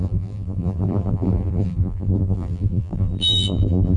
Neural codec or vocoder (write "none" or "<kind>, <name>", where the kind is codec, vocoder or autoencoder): vocoder, BigVGAN v2